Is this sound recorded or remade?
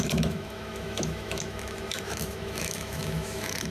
remade